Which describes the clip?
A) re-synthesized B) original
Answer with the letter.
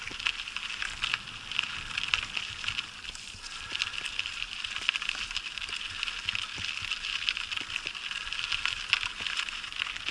B